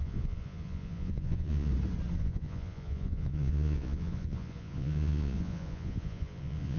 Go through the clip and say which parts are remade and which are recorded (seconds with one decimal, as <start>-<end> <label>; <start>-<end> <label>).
0.0-1.7 remade; 1.7-2.2 recorded; 2.2-6.8 remade